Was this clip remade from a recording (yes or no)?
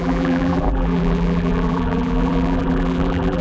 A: yes